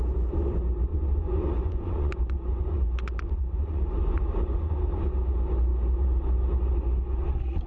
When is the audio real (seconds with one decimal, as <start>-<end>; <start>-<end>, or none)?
0.0-0.9; 5.0-7.7

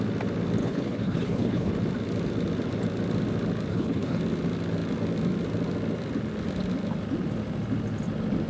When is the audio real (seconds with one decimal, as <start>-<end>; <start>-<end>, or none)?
0.0-0.6; 1.7-3.7; 4.2-8.5

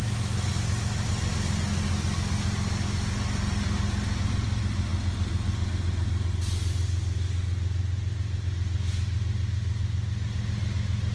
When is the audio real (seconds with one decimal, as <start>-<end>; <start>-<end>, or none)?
0.5-11.1

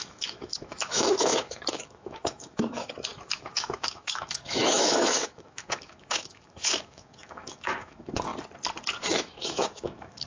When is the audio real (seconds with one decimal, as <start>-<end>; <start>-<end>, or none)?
8.3-9.1

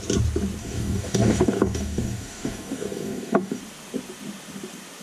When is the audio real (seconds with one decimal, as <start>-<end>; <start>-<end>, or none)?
0.0-0.6; 3.6-5.0

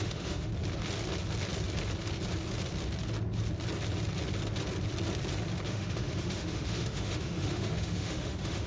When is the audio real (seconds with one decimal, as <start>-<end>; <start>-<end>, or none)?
0.5-5.7